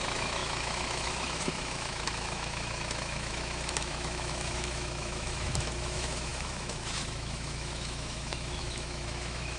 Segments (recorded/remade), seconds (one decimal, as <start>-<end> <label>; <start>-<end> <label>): 0.0-9.6 remade